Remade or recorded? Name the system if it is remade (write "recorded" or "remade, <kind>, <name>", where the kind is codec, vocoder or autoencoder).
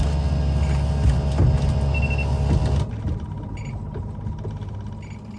recorded